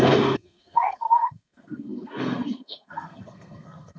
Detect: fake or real fake